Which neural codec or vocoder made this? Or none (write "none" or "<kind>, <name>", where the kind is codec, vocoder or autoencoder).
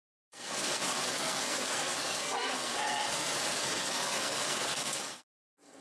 codec, SNAC